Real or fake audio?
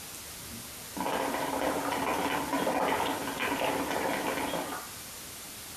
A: real